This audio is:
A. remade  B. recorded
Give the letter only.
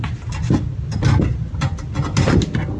B